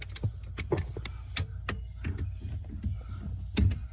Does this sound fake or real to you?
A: real